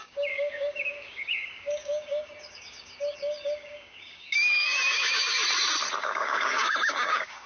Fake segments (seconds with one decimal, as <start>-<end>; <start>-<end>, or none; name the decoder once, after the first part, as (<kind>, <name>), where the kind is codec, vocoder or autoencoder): 0.0-5.4 (codec, DAC); 6.0-7.5